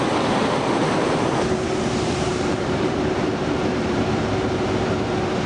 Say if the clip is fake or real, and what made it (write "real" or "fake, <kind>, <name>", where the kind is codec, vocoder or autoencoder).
fake, vocoder, BigVGAN v2